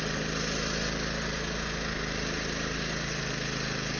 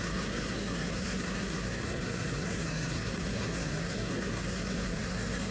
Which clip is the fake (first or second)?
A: second